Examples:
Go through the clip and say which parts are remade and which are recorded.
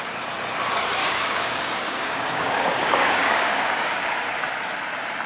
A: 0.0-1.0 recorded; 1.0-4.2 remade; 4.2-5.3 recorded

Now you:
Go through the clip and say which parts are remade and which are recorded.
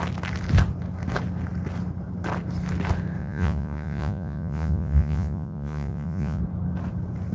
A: 0.0-3.2 recorded; 3.2-6.4 remade; 6.4-7.3 recorded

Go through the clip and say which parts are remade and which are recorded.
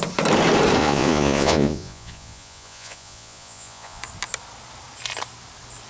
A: 0.0-0.8 recorded; 0.8-4.0 remade; 4.0-5.9 recorded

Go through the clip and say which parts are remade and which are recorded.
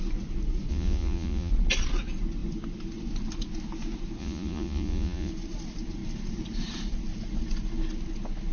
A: 0.0-0.7 recorded; 0.7-1.5 remade; 1.5-4.2 recorded; 4.2-5.3 remade; 5.3-8.5 recorded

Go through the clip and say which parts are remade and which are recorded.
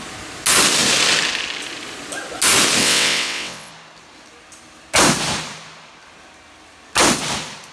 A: 0.0-2.8 recorded; 2.8-3.7 remade; 3.7-7.7 recorded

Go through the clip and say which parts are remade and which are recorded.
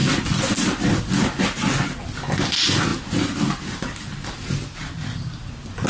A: 0.0-5.9 recorded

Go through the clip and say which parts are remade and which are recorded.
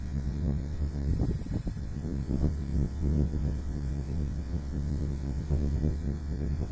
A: 0.0-1.1 remade; 1.1-1.8 recorded; 1.8-6.7 remade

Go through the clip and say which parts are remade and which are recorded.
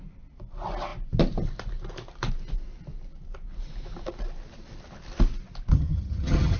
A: 0.0-5.7 recorded; 5.7-6.6 remade